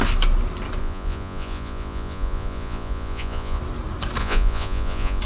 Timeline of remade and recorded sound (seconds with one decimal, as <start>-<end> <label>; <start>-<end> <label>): 0.0-0.8 recorded; 0.8-3.6 remade; 3.6-4.2 recorded; 4.2-5.2 remade